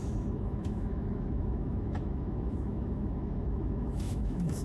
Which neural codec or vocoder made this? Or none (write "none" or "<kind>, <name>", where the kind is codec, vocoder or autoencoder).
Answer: autoencoder, DAC-VAE